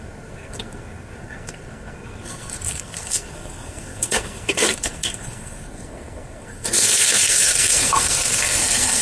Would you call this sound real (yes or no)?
no